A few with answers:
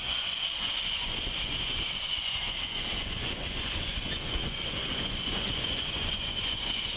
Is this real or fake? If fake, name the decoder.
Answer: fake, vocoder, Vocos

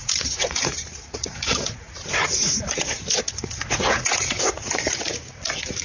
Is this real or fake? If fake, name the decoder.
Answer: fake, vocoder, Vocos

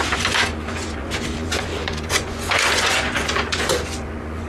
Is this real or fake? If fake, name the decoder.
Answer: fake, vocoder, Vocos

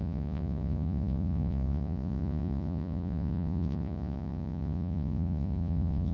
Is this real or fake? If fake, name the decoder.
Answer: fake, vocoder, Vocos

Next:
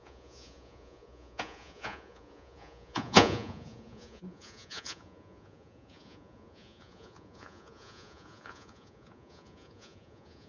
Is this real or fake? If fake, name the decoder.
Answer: fake, vocoder, Vocos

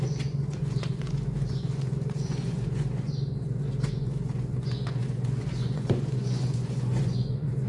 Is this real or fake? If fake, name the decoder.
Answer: fake, vocoder, Vocos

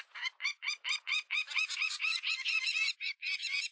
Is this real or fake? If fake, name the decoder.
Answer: fake, vocoder, Vocos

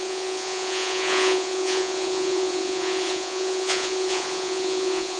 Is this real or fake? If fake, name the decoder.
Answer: fake, vocoder, Vocos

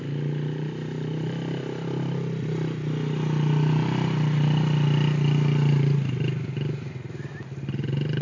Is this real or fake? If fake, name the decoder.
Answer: real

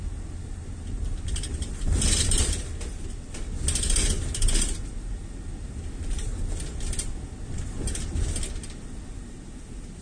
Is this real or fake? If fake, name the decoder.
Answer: real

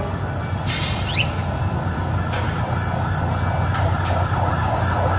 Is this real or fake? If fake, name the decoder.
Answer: real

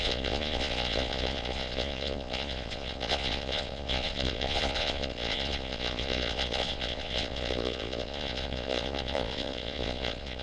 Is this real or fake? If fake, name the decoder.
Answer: fake, vocoder, Vocos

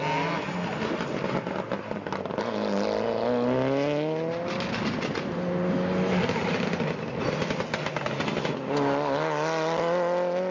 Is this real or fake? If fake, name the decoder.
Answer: real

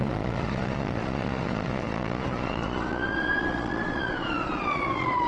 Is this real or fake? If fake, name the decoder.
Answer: fake, vocoder, Vocos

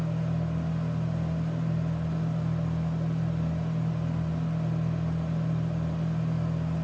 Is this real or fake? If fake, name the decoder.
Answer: real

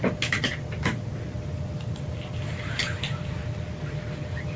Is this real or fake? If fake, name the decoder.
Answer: real